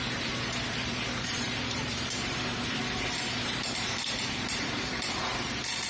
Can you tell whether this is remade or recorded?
remade